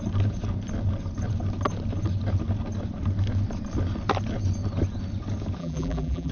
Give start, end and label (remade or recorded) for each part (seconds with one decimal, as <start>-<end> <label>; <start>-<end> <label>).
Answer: 0.0-5.6 recorded; 5.6-6.3 remade